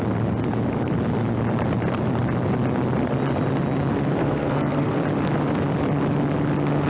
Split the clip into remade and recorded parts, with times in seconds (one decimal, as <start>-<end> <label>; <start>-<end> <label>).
0.0-4.2 recorded; 4.2-5.0 remade; 5.0-6.9 recorded